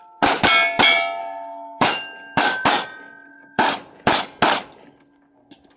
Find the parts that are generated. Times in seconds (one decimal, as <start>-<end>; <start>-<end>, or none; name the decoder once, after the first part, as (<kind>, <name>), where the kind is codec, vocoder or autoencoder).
1.2-1.9 (codec, DAC); 3.3-4.1